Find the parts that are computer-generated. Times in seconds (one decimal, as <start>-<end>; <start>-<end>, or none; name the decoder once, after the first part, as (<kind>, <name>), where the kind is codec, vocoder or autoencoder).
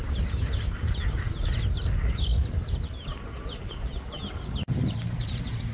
none